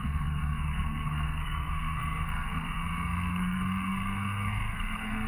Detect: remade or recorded remade